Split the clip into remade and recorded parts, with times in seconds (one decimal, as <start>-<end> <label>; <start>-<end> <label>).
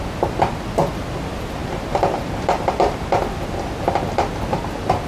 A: 0.0-1.6 recorded; 1.6-2.9 remade; 2.9-5.1 recorded